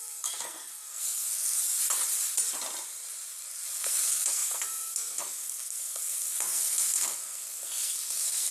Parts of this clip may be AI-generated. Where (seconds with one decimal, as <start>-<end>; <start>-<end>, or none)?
0.0-1.6; 3.8-8.5

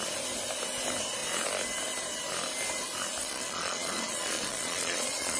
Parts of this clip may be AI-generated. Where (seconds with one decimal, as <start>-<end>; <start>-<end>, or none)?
3.2-5.4

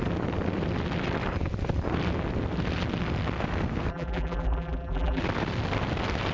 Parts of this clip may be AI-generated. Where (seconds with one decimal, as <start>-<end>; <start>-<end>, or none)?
3.9-5.2

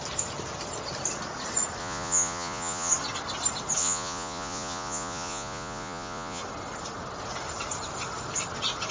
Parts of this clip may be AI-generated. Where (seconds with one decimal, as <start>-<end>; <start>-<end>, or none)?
1.8-2.9; 3.8-6.4

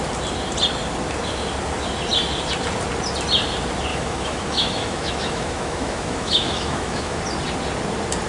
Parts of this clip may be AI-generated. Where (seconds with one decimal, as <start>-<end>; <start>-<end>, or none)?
3.9-7.2